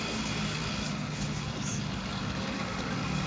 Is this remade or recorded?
remade